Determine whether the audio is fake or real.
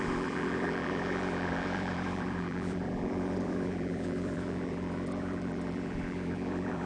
fake